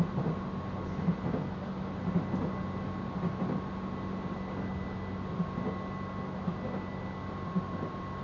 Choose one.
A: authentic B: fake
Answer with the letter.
A